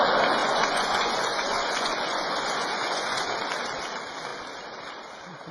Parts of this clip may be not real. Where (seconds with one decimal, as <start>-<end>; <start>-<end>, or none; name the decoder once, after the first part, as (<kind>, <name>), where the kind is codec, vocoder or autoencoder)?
0.4-3.3 (vocoder, Vocos)